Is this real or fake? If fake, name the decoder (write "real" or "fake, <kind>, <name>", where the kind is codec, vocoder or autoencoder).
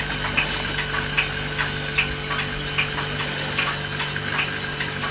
real